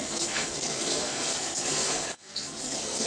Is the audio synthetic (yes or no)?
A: yes